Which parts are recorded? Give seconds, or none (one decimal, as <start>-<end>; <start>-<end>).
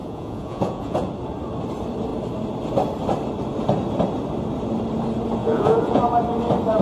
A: 1.1-5.4; 6.0-6.8